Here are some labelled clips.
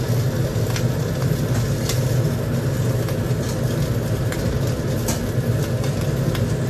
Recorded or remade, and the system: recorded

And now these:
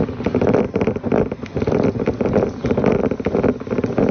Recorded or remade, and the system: recorded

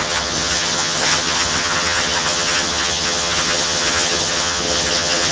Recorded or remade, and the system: remade, vocoder, HiFi-GAN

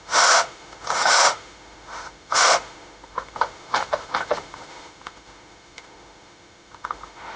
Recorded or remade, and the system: remade, autoencoder, DAC-VAE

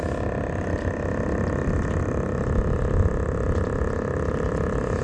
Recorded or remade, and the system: recorded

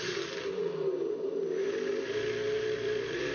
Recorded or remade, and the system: recorded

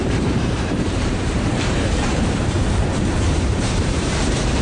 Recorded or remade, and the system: remade, vocoder, BigVGAN v2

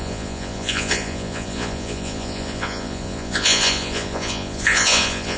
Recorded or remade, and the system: remade, vocoder, Vocos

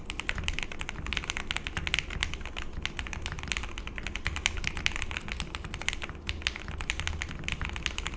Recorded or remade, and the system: recorded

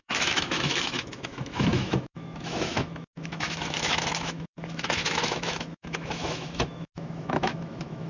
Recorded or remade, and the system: remade, autoencoder, DAC-VAE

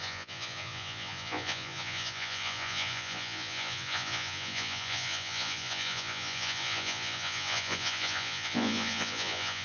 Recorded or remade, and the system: remade, vocoder, Vocos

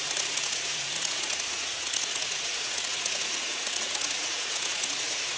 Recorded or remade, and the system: remade, vocoder, Vocos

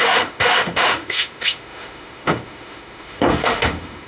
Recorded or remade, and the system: remade, autoencoder, DAC-VAE